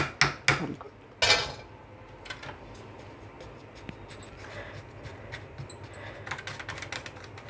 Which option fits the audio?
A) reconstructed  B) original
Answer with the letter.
B